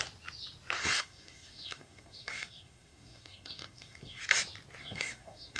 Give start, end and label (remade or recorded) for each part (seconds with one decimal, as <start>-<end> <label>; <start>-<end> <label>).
0.0-0.8 recorded; 0.8-4.2 remade; 4.2-4.8 recorded; 4.8-5.6 remade

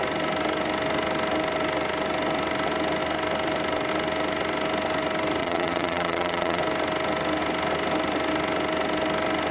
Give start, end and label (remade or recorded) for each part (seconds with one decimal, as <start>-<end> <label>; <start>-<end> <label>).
0.0-5.4 recorded; 5.4-6.6 remade; 6.6-9.5 recorded

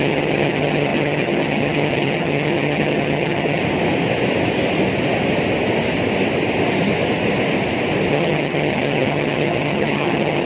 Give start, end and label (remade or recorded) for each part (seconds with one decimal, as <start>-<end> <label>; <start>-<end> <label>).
0.0-3.6 remade; 3.6-8.1 recorded; 8.1-10.5 remade

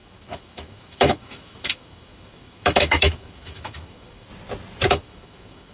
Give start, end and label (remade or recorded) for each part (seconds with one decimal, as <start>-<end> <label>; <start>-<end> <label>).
0.0-4.3 remade; 4.3-4.9 recorded; 4.9-5.7 remade

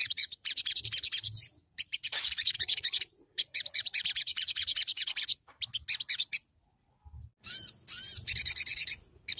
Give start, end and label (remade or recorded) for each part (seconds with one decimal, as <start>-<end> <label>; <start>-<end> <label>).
0.0-0.8 remade; 0.8-1.6 recorded; 1.6-5.5 remade; 5.5-6.2 recorded; 6.2-7.0 remade; 7.0-8.7 recorded; 8.7-9.4 remade

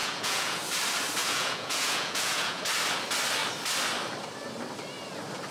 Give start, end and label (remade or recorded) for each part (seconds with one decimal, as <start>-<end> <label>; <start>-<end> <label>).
0.0-0.6 remade; 0.6-1.2 recorded; 1.2-2.6 remade; 2.6-5.5 recorded

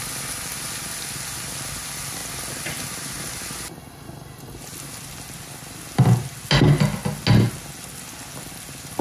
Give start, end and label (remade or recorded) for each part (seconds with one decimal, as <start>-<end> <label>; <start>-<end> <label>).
0.0-9.0 recorded

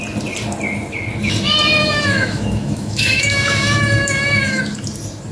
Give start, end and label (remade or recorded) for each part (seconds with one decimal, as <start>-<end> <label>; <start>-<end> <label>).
0.0-1.8 recorded; 1.8-4.6 remade; 4.6-5.3 recorded